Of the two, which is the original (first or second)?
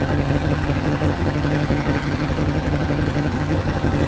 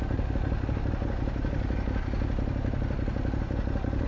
second